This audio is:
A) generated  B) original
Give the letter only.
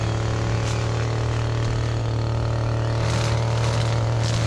B